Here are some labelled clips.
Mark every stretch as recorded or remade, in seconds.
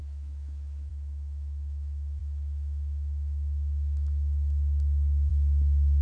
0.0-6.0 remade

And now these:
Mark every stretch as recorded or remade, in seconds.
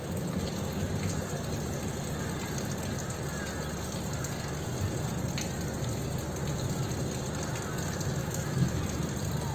0.0-8.2 recorded; 8.2-8.8 remade; 8.8-9.5 recorded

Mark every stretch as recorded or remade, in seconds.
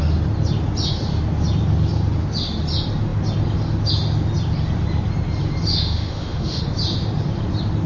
0.0-5.7 recorded; 5.7-6.6 remade; 6.6-7.9 recorded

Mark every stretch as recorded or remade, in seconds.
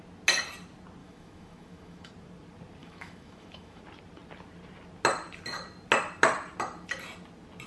0.0-1.0 recorded; 1.0-2.1 remade; 2.1-2.8 recorded; 2.8-3.8 remade; 3.8-7.7 recorded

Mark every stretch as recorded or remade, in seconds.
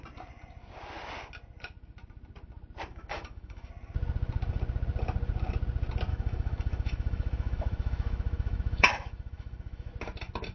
0.0-2.9 recorded; 2.9-3.7 remade; 3.7-6.1 recorded; 6.1-9.9 remade; 9.9-10.5 recorded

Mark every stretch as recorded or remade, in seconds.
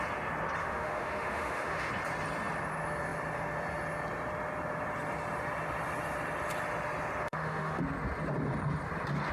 0.0-0.6 recorded; 0.6-1.9 remade; 1.9-7.2 recorded; 7.2-7.8 remade; 7.8-9.3 recorded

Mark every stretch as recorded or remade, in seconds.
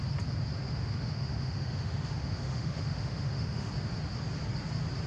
0.0-0.6 recorded; 0.6-3.7 remade; 3.7-5.1 recorded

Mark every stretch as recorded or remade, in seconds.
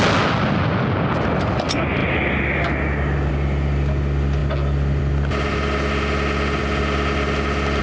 0.0-7.8 recorded